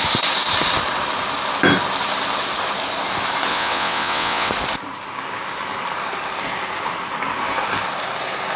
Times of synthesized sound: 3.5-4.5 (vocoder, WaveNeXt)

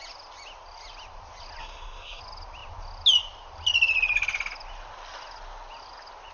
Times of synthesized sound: 1.6-2.2 (codec, SNAC)